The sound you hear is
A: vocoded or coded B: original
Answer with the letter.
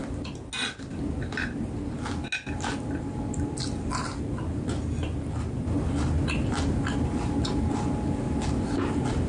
B